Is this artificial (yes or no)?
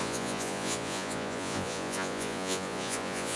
yes